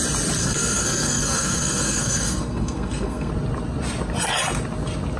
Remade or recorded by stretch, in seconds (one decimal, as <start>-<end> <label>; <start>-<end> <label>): 0.0-0.4 recorded; 0.4-3.3 remade; 3.3-5.2 recorded